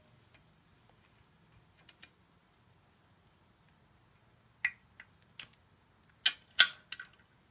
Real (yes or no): yes